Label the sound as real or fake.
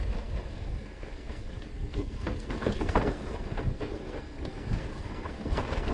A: fake